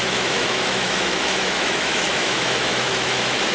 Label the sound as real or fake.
fake